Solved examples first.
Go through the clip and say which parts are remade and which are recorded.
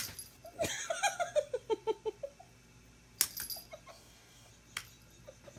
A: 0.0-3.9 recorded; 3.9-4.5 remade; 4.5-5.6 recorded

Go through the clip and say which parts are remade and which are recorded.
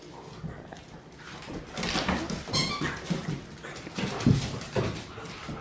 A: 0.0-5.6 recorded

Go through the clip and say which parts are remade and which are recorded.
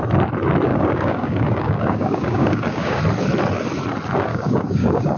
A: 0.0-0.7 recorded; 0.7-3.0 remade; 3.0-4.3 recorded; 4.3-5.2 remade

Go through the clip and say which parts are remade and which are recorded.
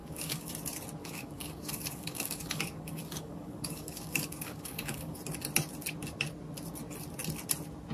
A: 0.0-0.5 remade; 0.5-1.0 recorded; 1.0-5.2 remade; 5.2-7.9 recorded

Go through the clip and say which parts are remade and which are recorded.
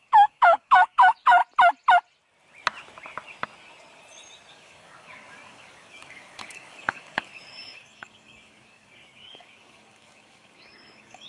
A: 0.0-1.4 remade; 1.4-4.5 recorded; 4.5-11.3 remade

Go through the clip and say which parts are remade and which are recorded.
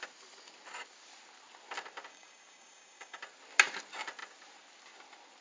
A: 0.0-2.1 recorded; 2.1-3.2 remade; 3.2-5.4 recorded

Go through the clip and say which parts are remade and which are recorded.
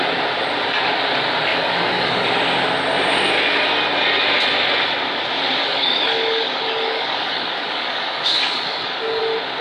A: 0.0-1.5 recorded; 1.5-2.3 remade; 2.3-5.6 recorded; 5.6-9.2 remade; 9.2-9.6 recorded